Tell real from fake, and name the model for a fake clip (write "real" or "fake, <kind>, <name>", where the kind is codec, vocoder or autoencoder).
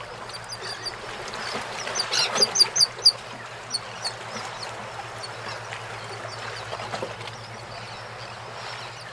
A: real